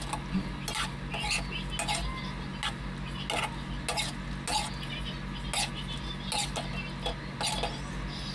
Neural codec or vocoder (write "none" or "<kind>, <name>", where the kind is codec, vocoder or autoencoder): none